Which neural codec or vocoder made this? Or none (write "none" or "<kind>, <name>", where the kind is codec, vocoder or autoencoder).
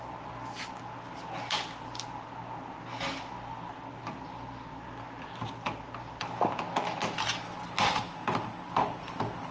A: none